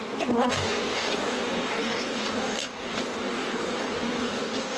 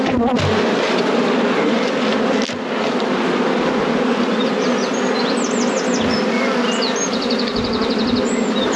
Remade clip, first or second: first